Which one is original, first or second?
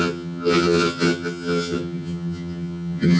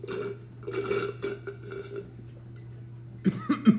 second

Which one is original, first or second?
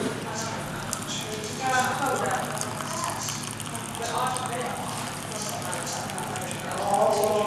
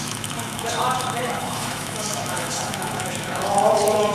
first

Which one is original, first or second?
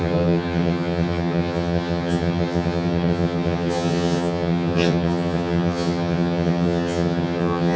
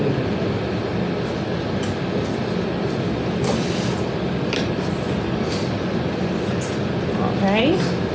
second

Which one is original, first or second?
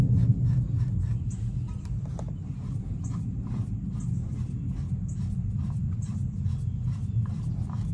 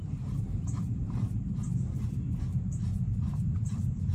first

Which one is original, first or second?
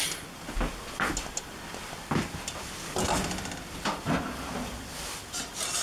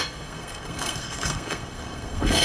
first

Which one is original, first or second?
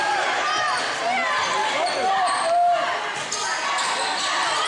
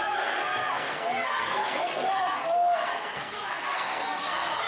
first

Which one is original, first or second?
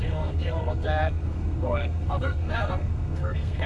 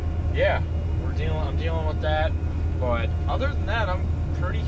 second